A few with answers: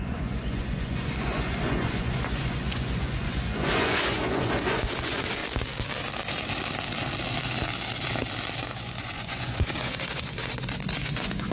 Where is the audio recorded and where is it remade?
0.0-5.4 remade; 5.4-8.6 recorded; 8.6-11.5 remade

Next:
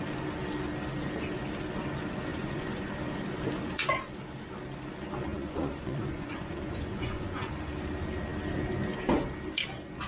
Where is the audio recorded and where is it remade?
0.0-2.3 recorded; 2.3-2.9 remade; 2.9-5.3 recorded; 5.3-7.5 remade; 7.5-10.1 recorded

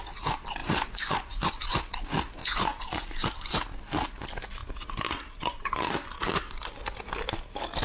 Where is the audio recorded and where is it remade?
0.0-0.6 recorded; 0.6-1.5 remade; 1.5-2.4 recorded; 2.4-3.3 remade; 3.3-7.8 recorded

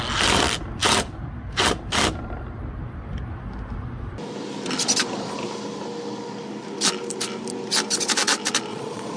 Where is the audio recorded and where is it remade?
0.0-8.7 recorded; 8.7-9.2 remade